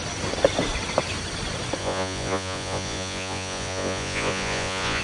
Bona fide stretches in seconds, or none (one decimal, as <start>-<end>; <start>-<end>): 0.0-1.8